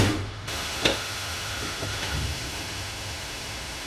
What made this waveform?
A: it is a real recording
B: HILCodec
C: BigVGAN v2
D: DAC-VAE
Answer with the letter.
D